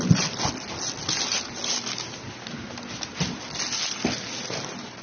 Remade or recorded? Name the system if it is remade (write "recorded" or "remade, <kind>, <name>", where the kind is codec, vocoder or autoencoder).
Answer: recorded